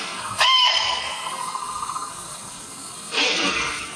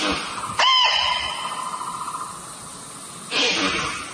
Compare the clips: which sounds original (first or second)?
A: second